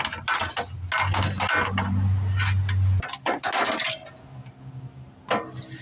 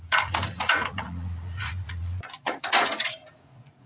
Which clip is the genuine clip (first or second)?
first